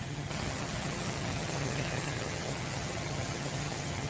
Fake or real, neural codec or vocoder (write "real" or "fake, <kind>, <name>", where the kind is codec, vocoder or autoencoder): fake, vocoder, HiFi-GAN